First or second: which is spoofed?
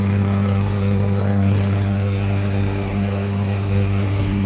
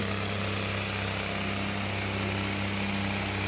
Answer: first